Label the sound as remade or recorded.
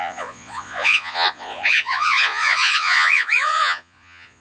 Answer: remade